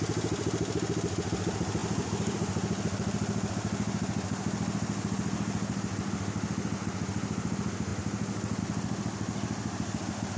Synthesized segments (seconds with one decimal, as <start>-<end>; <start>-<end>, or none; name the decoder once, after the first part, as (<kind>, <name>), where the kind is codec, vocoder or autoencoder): none